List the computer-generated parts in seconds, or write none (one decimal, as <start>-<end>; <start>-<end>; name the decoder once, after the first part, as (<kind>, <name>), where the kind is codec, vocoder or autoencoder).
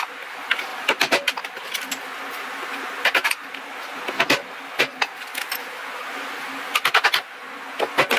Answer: 0.7-2.0 (vocoder, BigVGAN v2); 6.0-6.9